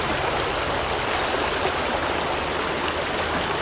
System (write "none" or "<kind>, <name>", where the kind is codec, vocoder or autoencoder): none